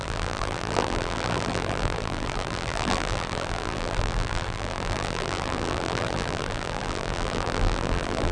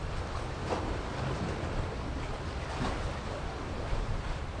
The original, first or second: second